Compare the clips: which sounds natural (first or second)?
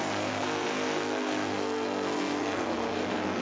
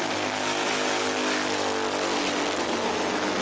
second